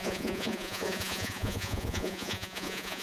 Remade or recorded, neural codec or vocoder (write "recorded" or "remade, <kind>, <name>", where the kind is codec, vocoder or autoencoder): remade, vocoder, Vocos